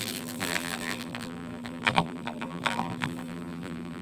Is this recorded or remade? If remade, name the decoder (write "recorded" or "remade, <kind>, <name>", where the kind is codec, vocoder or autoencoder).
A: remade, vocoder, BigVGAN v2